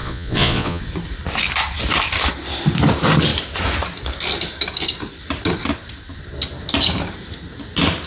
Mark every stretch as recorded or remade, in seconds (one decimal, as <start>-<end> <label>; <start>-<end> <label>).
0.0-0.8 remade; 0.8-8.1 recorded